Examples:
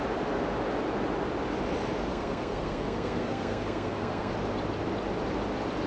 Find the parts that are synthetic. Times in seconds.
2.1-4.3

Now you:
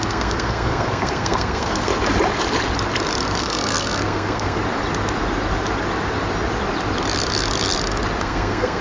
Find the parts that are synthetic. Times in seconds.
0.0-1.9; 3.4-4.6; 8.2-8.8

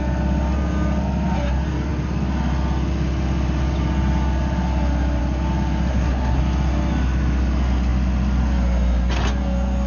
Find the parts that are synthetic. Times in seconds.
5.9-6.4